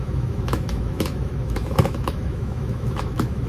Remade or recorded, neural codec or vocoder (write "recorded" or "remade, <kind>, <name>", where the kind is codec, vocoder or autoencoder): remade, autoencoder, DAC-VAE